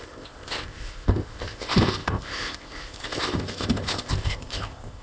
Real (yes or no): no